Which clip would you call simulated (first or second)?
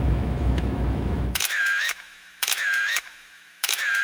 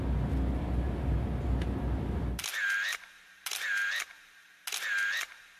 first